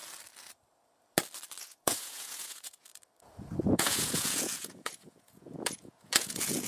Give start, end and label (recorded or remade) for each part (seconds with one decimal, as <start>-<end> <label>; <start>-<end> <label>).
0.0-1.6 recorded; 1.6-2.9 remade; 2.9-3.7 recorded; 3.7-6.7 remade